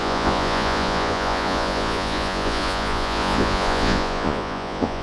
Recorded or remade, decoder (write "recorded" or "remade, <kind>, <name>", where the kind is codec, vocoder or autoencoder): remade, vocoder, Vocos